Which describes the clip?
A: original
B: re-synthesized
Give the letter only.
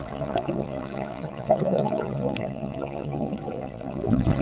B